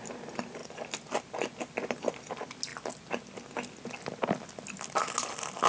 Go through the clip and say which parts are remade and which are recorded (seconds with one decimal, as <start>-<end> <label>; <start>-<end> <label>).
0.0-5.7 recorded